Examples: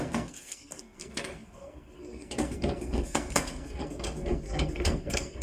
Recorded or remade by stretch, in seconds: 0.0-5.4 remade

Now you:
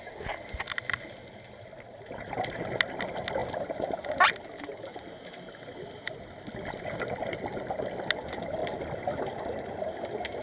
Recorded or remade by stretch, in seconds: 0.0-10.4 recorded

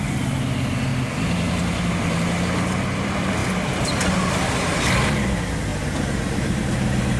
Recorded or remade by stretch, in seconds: 0.0-7.2 recorded